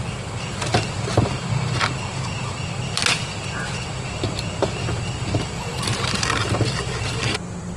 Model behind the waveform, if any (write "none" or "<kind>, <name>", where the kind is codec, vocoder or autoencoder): none